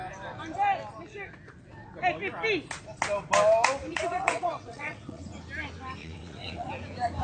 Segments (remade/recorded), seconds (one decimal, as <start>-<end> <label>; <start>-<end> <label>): 0.0-3.9 recorded; 3.9-5.2 remade; 5.2-6.0 recorded; 6.0-6.7 remade; 6.7-7.2 recorded